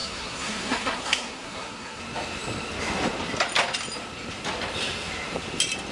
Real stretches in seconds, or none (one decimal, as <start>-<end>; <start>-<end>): 2.0-5.9